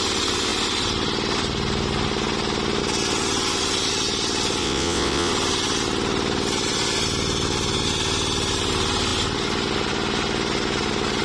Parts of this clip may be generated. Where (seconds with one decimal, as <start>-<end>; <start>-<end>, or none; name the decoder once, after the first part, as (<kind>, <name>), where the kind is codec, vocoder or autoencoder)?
4.6-5.3 (vocoder, WaveNeXt)